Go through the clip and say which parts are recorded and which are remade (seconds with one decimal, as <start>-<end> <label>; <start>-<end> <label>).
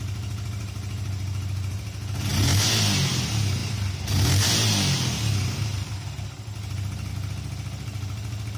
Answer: 0.0-8.6 recorded